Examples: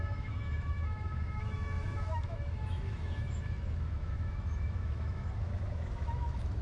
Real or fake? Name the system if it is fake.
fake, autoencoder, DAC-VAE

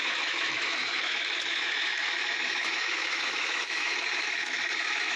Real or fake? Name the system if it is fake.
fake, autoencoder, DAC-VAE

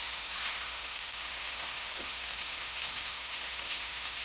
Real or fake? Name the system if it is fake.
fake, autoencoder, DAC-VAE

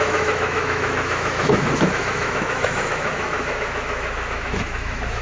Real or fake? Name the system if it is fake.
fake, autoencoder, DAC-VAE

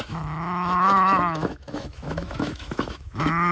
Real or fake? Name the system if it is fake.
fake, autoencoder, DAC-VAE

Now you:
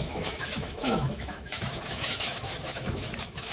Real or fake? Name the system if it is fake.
fake, autoencoder, DAC-VAE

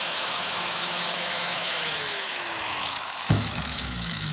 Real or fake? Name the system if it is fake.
fake, autoencoder, DAC-VAE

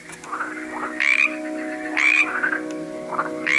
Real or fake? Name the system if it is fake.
real